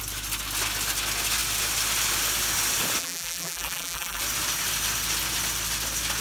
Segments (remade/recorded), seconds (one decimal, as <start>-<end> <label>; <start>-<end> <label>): 0.0-3.0 recorded; 3.0-4.2 remade; 4.2-6.2 recorded